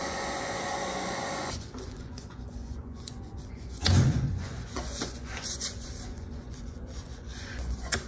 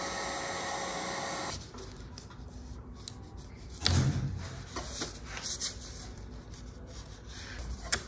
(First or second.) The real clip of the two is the second